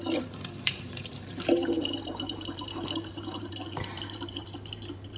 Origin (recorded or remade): remade